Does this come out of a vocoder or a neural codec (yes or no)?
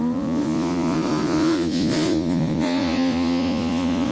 yes